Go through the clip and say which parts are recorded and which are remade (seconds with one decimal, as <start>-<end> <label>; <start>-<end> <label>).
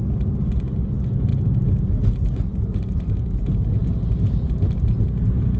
0.0-5.6 recorded